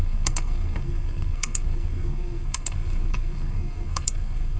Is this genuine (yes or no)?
no